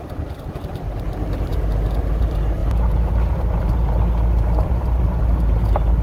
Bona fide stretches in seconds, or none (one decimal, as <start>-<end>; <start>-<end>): 1.5-2.1